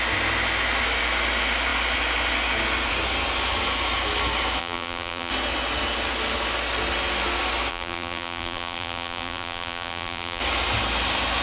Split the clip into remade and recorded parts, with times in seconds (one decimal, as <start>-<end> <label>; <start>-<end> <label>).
0.0-4.6 recorded; 4.6-5.3 remade; 5.3-7.7 recorded; 7.7-10.4 remade; 10.4-11.4 recorded